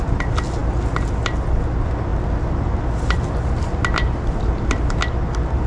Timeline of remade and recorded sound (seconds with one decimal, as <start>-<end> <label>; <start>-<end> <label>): 0.0-5.7 recorded